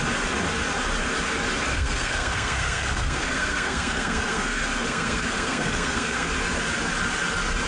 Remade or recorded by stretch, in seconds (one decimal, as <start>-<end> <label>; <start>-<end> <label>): 0.0-1.7 recorded; 1.7-6.3 remade; 6.3-7.7 recorded